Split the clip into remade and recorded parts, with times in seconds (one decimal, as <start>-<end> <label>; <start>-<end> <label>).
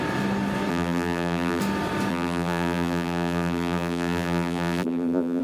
0.0-0.7 recorded; 0.7-1.6 remade; 1.6-2.1 recorded; 2.1-5.4 remade